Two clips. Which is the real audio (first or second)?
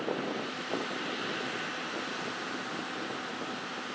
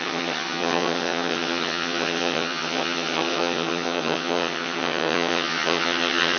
first